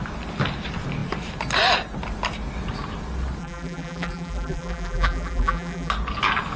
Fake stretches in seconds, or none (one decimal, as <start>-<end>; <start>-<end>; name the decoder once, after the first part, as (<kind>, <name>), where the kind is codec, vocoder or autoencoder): 3.4-5.9 (vocoder, BigVGAN v2)

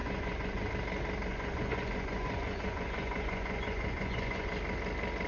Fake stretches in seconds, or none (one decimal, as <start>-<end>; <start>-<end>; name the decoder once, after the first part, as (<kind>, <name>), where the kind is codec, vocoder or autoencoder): 0.0-0.7 (vocoder, Vocos); 1.3-4.5

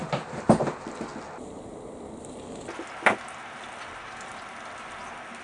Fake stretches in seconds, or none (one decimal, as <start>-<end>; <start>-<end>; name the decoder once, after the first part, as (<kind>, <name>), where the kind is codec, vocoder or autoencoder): 0.6-1.1 (vocoder, BigVGAN v2); 3.8-4.3; 4.9-5.4

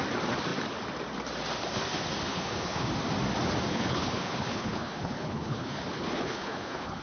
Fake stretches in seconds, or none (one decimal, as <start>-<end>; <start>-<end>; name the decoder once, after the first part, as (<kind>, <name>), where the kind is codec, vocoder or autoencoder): 2.3-2.9 (codec, HILCodec); 3.7-7.0

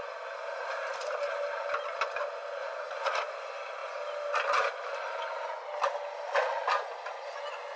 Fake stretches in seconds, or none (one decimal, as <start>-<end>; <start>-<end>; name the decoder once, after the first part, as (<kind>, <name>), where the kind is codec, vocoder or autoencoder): 2.6-3.2 (vocoder, Vocos)

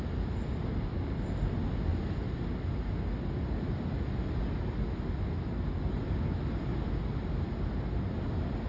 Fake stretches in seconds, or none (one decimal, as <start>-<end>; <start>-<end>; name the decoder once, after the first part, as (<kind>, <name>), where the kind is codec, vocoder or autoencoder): 0.9-1.5 (vocoder, BigVGAN v2)

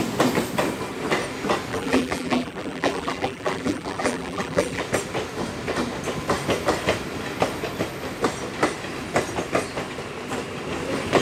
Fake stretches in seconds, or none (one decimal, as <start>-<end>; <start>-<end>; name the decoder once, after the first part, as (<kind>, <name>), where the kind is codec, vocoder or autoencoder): 1.7-4.8 (vocoder, BigVGAN v2)